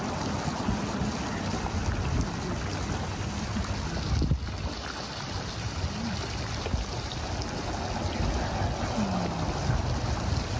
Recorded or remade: recorded